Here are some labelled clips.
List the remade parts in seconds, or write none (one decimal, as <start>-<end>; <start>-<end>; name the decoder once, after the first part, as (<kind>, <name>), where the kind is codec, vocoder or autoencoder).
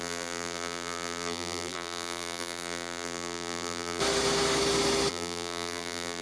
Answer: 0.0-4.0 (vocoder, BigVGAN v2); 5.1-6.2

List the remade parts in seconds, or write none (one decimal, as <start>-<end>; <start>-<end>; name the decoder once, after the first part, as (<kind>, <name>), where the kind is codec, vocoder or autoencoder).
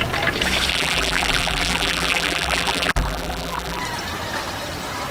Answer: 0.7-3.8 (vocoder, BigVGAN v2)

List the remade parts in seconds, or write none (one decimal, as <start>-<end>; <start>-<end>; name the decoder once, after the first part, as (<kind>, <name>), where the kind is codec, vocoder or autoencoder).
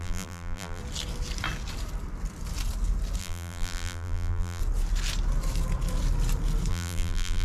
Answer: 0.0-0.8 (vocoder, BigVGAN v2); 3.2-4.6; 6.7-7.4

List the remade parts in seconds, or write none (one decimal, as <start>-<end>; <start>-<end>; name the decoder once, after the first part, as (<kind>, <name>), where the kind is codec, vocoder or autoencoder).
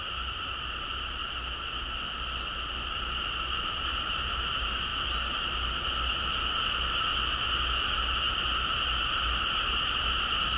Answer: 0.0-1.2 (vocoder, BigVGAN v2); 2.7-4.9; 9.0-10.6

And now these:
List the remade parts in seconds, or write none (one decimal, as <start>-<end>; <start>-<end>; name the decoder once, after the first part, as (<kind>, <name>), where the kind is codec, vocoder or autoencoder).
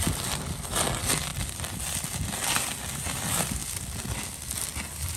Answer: none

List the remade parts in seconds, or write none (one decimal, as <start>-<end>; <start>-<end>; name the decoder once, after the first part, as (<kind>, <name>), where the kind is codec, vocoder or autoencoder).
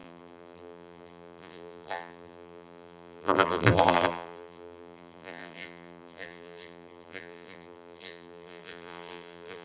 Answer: 0.0-9.6 (vocoder, BigVGAN v2)